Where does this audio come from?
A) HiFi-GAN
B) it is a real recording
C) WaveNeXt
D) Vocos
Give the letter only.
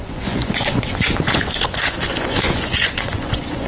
D